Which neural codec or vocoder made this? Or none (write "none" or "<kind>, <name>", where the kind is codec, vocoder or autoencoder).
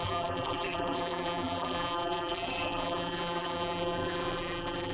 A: vocoder, BigVGAN v2